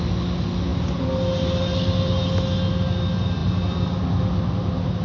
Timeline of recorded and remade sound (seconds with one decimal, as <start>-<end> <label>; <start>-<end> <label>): 0.0-5.0 recorded